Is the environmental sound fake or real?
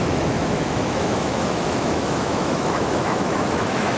fake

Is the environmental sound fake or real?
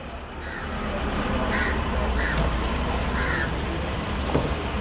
real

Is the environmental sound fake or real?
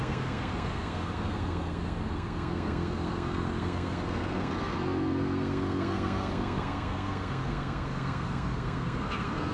fake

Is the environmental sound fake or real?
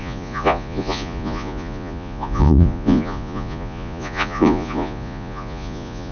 fake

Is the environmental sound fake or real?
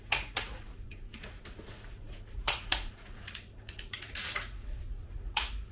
fake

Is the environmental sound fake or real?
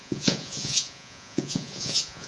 fake